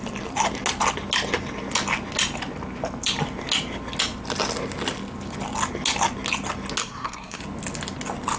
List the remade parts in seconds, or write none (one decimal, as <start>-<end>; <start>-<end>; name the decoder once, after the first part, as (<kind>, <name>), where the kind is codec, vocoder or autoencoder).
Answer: 6.8-7.4 (codec, SNAC)